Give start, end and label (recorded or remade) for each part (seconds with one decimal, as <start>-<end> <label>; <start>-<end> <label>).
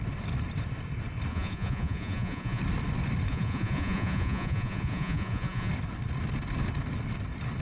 0.0-1.3 recorded; 1.3-2.6 remade; 2.6-3.3 recorded; 3.3-5.7 remade; 5.7-7.6 recorded